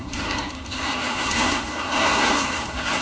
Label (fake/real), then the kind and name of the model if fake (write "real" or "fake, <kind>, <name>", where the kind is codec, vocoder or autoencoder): fake, codec, SNAC